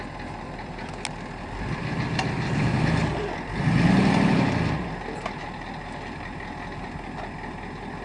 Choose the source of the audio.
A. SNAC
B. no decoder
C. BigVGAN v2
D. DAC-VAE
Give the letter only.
B